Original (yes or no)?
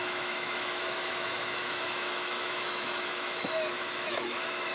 no